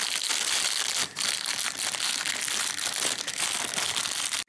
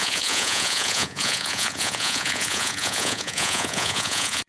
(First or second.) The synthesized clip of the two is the second